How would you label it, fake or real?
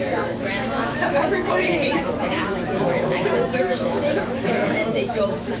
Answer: fake